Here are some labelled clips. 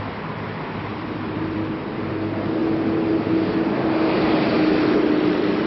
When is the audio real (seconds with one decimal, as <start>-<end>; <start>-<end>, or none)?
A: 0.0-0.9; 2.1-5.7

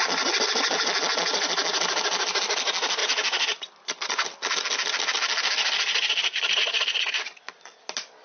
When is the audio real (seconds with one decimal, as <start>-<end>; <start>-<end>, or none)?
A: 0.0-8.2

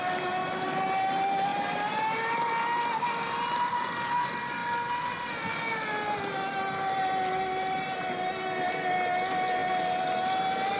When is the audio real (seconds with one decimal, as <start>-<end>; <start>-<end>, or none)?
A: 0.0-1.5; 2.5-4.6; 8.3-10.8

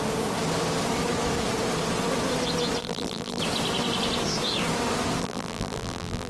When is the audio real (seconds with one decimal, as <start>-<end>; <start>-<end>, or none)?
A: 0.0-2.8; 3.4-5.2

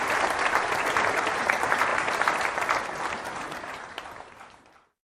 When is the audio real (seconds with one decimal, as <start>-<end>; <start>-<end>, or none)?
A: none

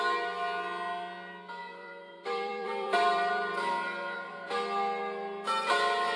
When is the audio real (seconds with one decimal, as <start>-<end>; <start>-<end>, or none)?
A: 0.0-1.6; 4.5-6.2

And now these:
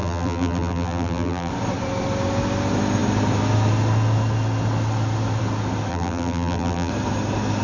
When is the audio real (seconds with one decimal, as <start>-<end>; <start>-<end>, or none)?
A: 1.5-5.9; 6.9-7.6

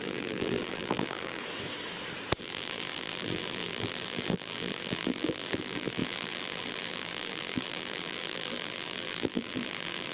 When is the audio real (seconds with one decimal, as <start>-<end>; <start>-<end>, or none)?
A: 1.4-2.4